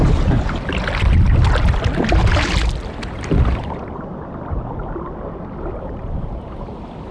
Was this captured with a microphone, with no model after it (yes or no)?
yes